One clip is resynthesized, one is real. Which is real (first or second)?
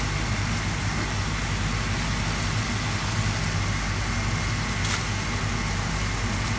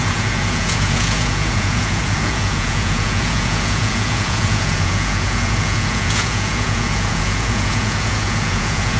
first